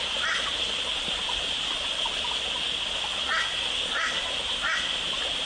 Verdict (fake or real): real